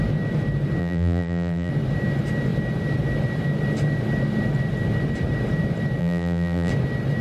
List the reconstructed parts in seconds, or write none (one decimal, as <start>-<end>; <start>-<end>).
0.8-1.7; 6.0-6.7